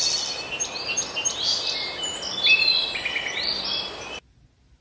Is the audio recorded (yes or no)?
yes